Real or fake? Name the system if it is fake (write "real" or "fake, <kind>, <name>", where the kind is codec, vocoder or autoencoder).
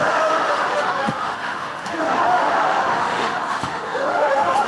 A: fake, autoencoder, DAC-VAE